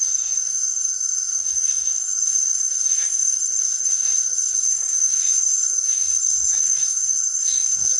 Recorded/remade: remade